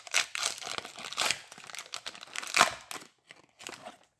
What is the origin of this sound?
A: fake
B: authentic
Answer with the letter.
B